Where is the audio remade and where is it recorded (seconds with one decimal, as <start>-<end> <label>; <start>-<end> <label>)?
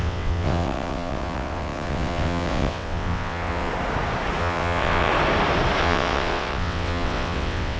0.0-3.7 remade; 3.7-4.4 recorded; 4.4-5.1 remade; 5.1-5.8 recorded; 5.8-7.8 remade